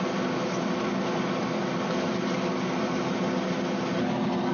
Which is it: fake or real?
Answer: real